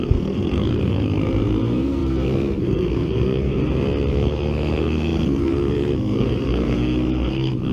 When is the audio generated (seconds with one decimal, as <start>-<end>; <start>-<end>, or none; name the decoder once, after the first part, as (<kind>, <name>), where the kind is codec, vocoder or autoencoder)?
0.0-3.5 (codec, SNAC); 4.1-7.7